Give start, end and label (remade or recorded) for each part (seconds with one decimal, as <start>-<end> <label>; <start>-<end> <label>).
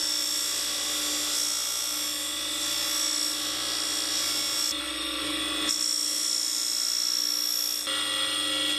0.0-4.8 recorded; 4.8-5.4 remade; 5.4-8.8 recorded